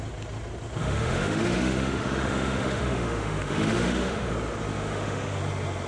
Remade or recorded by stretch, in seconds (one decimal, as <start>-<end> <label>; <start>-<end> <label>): 0.0-0.8 recorded; 0.8-4.3 remade; 4.3-4.7 recorded; 4.7-5.4 remade; 5.4-5.9 recorded